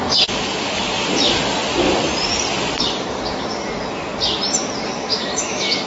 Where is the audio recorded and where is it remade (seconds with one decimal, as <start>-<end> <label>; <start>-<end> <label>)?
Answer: 0.0-5.1 recorded; 5.1-5.9 remade